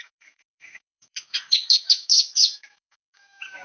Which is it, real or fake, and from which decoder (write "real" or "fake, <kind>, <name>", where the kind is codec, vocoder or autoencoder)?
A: fake, autoencoder, DAC-VAE